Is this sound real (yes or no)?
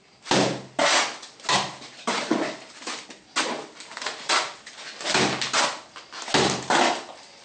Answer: yes